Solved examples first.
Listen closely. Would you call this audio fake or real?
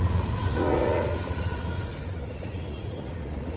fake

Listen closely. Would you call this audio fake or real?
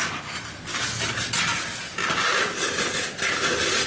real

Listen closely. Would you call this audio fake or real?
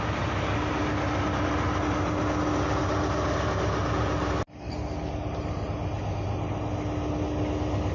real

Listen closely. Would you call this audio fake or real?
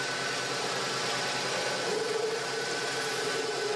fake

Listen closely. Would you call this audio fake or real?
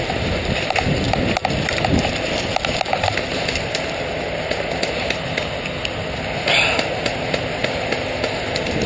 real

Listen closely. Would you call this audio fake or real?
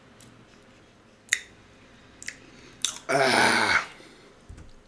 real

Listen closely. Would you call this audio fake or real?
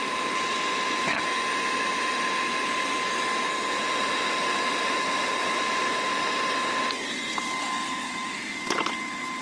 real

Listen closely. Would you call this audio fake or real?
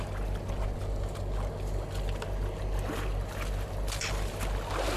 real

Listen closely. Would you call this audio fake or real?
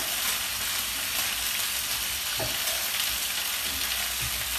real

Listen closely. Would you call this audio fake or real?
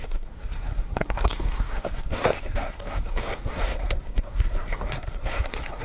fake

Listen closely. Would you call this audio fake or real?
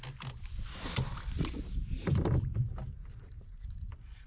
real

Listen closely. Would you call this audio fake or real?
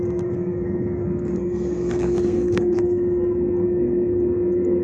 fake